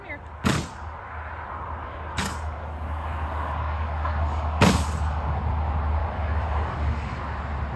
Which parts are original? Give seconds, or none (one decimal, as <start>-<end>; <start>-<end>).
0.0-1.8; 5.4-6.0; 7.2-7.8